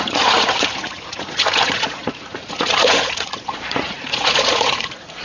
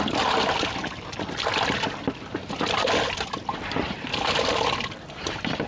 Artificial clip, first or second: first